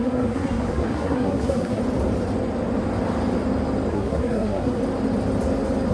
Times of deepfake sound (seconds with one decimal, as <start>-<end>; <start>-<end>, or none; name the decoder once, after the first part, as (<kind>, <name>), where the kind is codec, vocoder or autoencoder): 0.0-1.8 (codec, SNAC); 3.9-4.8